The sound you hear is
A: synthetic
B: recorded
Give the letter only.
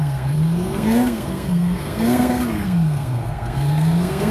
A